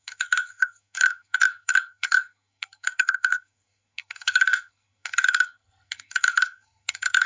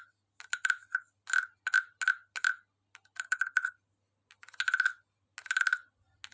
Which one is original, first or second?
second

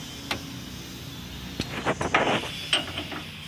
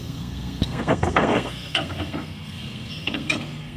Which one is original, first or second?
first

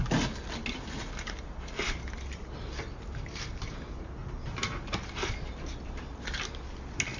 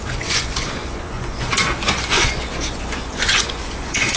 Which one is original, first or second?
first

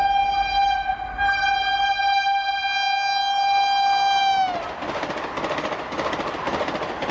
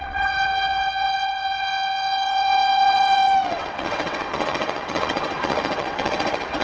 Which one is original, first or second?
first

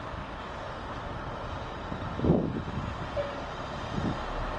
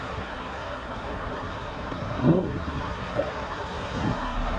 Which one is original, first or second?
first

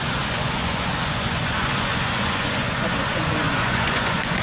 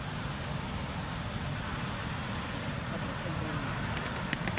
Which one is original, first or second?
second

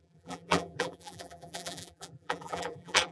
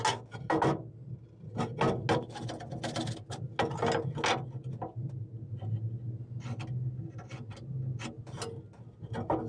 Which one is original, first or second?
second